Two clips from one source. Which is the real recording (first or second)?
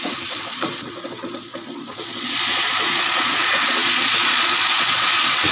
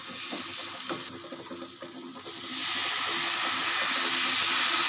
second